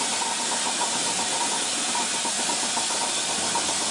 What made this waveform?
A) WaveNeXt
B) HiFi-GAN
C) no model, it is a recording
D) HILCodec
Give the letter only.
C